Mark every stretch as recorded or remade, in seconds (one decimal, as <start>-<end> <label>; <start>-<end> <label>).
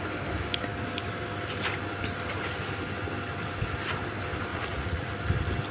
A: 0.0-4.5 recorded; 4.5-5.1 remade; 5.1-5.7 recorded